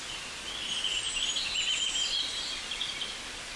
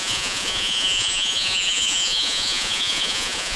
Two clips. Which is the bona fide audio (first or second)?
first